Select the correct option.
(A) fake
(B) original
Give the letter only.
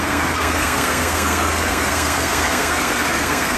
A